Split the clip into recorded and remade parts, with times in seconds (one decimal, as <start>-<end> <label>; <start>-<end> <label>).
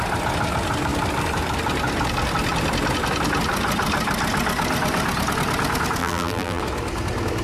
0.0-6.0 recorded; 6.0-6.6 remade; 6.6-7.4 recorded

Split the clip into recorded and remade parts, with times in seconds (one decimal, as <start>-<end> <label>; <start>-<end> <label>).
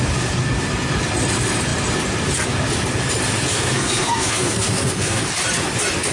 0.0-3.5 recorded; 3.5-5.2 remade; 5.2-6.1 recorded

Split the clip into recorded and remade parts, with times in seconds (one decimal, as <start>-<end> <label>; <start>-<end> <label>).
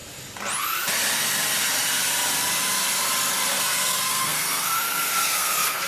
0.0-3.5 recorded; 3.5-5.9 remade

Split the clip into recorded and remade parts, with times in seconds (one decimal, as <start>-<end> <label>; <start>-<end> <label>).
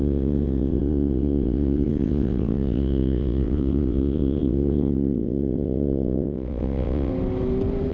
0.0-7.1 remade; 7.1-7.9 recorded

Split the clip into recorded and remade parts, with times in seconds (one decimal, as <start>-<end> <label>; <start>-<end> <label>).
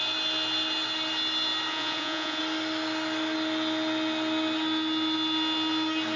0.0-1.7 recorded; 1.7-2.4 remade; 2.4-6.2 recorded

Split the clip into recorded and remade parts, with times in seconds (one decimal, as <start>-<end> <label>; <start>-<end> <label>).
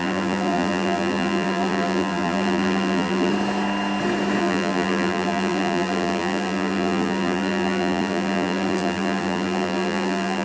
0.0-3.3 remade; 3.3-4.4 recorded; 4.4-10.4 remade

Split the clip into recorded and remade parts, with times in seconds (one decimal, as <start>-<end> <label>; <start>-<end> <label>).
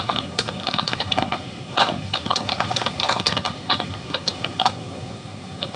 0.0-5.8 remade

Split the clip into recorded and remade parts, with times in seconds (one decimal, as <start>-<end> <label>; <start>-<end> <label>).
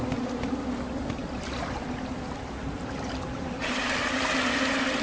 0.0-1.2 recorded; 1.2-4.2 remade; 4.2-5.0 recorded